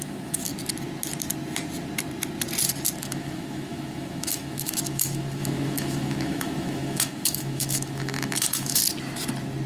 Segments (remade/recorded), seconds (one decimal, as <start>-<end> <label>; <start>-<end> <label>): 0.0-0.5 remade; 0.5-3.0 recorded; 3.0-8.8 remade; 8.8-9.7 recorded